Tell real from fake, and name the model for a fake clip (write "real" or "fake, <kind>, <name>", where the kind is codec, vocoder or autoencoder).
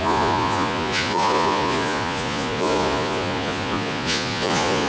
fake, vocoder, Vocos